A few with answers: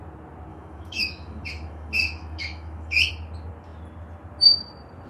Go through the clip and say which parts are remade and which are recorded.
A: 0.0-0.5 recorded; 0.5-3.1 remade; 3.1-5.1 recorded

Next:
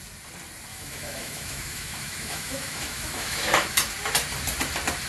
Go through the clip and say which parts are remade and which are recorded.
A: 0.0-0.7 recorded; 0.7-3.8 remade; 3.8-5.1 recorded

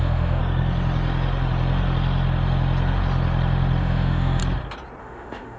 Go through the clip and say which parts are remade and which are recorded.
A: 0.0-0.4 remade; 0.4-3.8 recorded; 3.8-4.4 remade; 4.4-5.0 recorded; 5.0-5.6 remade

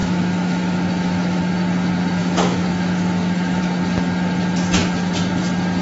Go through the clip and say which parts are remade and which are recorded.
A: 0.0-1.4 remade; 1.4-2.2 recorded; 2.2-3.6 remade; 3.6-5.8 recorded

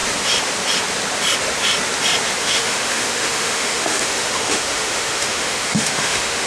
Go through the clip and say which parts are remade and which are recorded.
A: 0.0-2.4 recorded; 2.4-6.5 remade

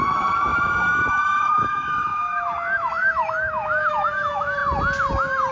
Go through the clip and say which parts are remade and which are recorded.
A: 0.0-4.6 remade; 4.6-5.5 recorded

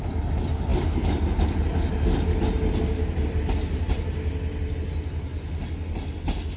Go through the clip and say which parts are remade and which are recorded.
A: 0.0-6.6 recorded

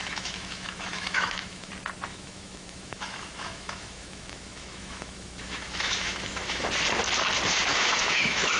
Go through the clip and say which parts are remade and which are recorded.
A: 0.0-1.7 remade; 1.7-2.1 recorded; 2.1-6.7 remade; 6.7-7.7 recorded; 7.7-8.6 remade